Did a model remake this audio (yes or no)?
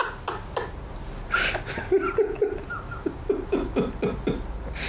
no